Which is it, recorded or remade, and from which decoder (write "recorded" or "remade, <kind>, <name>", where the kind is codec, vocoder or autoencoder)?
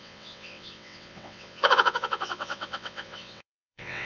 remade, vocoder, WaveNeXt